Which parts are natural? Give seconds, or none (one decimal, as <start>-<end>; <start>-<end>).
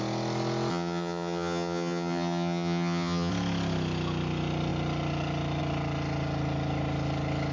0.0-0.7; 3.3-7.5